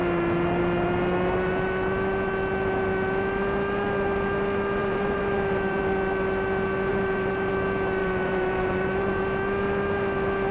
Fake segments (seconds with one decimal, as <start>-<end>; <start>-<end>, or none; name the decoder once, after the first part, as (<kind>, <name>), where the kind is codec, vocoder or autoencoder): 4.8-5.8 (vocoder, BigVGAN v2); 6.9-7.5; 8.0-9.2